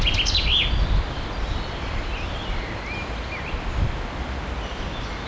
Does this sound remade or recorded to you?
recorded